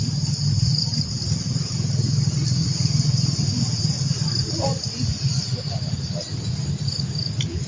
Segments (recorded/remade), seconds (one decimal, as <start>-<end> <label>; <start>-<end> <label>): 0.0-7.7 recorded